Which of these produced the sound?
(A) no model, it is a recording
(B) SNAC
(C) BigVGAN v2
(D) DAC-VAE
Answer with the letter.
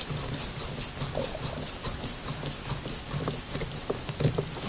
A